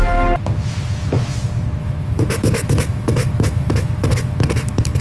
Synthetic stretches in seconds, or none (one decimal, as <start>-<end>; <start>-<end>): 1.8-5.0